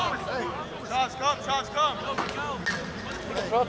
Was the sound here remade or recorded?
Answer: recorded